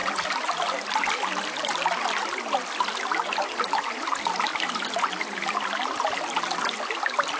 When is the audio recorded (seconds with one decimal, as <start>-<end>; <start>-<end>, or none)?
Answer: 0.0-7.4